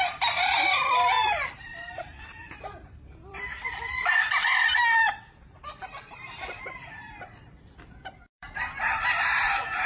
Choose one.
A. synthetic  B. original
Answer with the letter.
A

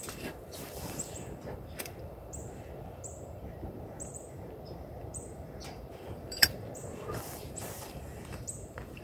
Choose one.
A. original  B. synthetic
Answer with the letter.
B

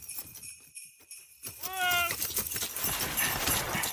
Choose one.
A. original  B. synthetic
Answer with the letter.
A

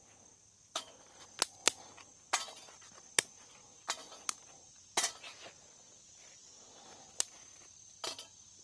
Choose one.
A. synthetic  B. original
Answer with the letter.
B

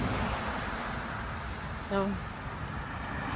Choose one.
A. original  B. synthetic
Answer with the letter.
A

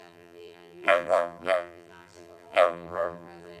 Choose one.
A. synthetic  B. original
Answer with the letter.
A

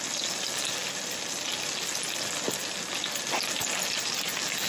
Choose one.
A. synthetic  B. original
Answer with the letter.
B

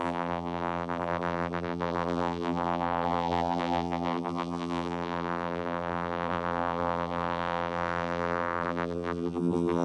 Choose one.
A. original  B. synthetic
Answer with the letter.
B